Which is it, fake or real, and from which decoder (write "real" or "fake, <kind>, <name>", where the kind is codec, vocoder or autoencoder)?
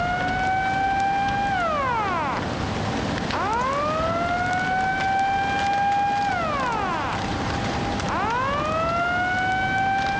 real